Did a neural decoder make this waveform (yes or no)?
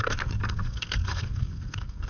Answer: yes